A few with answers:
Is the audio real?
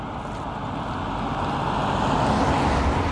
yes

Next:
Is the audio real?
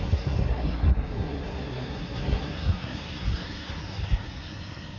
no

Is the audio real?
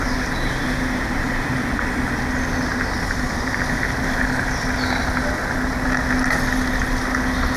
yes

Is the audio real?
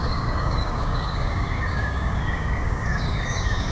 no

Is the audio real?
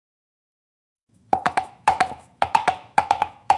no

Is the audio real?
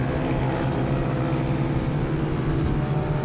yes